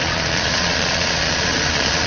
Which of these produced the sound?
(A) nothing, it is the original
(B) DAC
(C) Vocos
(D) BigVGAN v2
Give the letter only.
C